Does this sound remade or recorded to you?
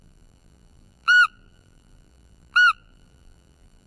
remade